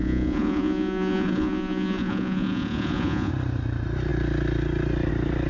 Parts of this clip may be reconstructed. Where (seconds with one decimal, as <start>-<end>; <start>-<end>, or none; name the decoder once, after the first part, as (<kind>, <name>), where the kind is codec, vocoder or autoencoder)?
0.0-3.3 (vocoder, Vocos)